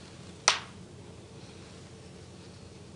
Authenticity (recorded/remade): recorded